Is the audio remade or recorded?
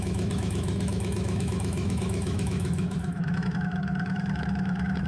remade